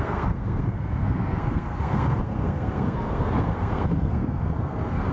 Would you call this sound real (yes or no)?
no